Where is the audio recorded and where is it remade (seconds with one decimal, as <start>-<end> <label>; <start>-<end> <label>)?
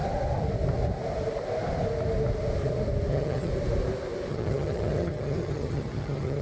0.0-3.1 recorded; 3.1-3.5 remade; 3.5-4.3 recorded; 4.3-6.4 remade